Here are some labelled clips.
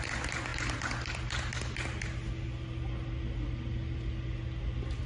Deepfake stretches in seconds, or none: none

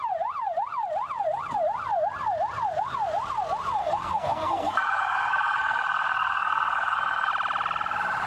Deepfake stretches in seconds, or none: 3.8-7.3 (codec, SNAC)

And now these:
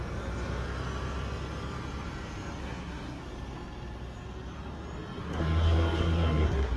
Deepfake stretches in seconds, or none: 2.6-3.2 (codec, SNAC); 5.2-6.8

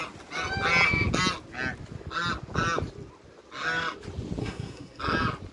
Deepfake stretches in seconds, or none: 4.4-5.0 (codec, SNAC)

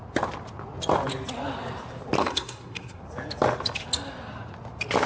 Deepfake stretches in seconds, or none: 2.2-3.0 (codec, SNAC)

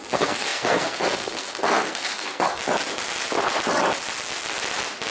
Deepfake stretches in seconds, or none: 0.0-2.6 (codec, SNAC)